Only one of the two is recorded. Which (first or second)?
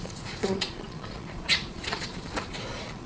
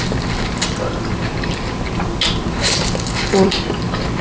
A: second